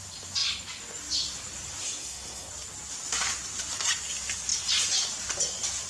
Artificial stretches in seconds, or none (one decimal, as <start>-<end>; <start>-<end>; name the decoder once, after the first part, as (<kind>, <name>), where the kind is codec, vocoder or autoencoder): 1.8-2.5 (codec, SNAC)